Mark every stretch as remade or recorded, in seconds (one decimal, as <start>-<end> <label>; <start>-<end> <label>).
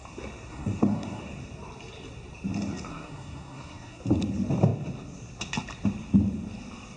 0.0-0.5 recorded; 0.5-1.2 remade; 1.2-2.9 recorded; 2.9-4.0 remade; 4.0-7.0 recorded